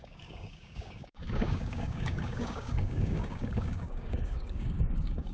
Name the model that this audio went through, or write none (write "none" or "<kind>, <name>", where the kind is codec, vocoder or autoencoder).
codec, DAC